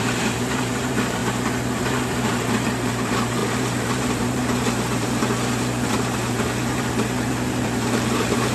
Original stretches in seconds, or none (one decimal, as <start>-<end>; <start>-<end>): 1.2-1.8